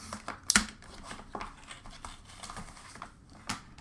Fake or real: real